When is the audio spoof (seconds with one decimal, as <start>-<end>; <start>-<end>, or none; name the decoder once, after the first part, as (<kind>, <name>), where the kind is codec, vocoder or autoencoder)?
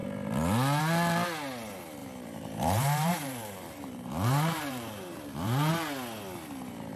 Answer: 2.0-5.7 (vocoder, BigVGAN v2)